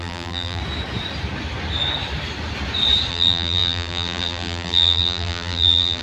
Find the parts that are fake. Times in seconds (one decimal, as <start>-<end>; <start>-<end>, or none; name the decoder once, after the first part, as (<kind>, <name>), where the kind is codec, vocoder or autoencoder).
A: 0.0-0.6 (vocoder, BigVGAN v2); 3.1-6.0